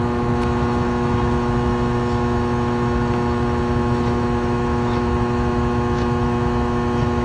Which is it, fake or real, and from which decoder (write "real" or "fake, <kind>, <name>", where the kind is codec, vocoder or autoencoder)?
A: fake, autoencoder, DAC-VAE